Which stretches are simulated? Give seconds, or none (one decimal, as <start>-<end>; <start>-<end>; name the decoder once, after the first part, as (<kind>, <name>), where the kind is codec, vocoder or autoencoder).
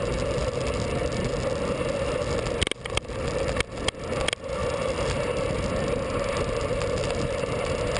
none